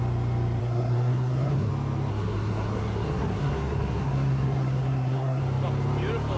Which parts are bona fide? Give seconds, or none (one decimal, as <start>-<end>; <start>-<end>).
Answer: 0.0-0.6; 1.7-2.1; 5.4-6.4